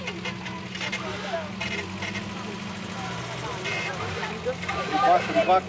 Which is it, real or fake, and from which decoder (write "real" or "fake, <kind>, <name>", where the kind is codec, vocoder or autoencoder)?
real